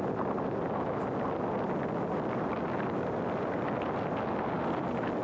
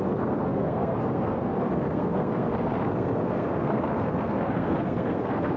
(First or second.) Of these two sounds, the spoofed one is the second